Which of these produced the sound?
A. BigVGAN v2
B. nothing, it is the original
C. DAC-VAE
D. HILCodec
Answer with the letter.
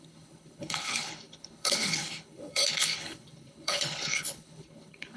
D